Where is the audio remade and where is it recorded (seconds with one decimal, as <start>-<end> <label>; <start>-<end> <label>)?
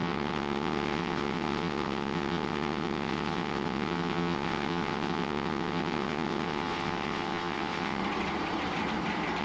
0.0-8.0 remade; 8.0-9.4 recorded